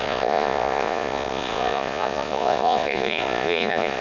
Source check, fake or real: fake